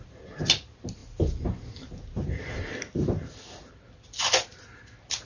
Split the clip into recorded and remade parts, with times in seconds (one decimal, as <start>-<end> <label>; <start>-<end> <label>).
0.0-5.3 recorded